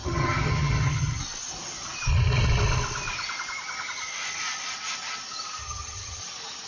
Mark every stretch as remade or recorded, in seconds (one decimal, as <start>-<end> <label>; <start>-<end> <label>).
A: 0.0-1.2 remade; 1.2-5.6 recorded; 5.6-6.2 remade; 6.2-6.7 recorded